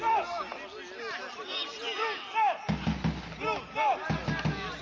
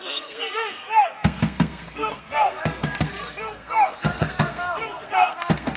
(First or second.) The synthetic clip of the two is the second